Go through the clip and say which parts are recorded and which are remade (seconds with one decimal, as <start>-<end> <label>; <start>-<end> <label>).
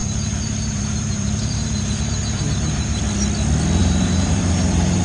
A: 0.0-3.0 remade; 3.0-3.8 recorded; 3.8-5.0 remade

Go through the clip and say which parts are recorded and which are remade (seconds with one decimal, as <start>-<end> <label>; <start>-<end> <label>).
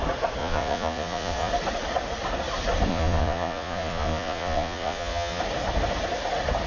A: 0.0-0.4 recorded; 0.4-1.5 remade; 1.5-2.9 recorded; 2.9-5.4 remade; 5.4-6.7 recorded